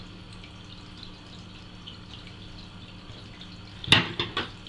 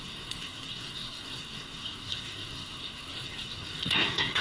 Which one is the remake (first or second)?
second